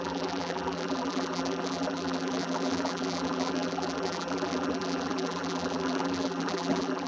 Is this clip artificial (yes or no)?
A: yes